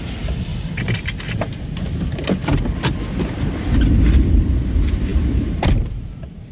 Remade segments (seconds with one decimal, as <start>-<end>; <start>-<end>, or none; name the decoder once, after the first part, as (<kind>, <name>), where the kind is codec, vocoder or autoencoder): 0.0-0.5 (vocoder, BigVGAN v2); 4.1-6.5